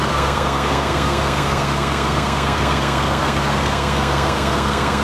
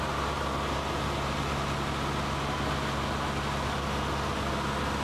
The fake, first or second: first